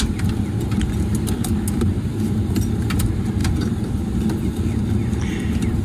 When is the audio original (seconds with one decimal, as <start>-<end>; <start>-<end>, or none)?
0.0-3.4; 4.0-5.8